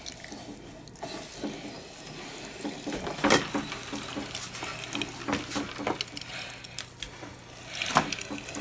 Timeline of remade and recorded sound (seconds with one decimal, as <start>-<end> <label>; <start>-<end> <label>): 0.0-8.6 recorded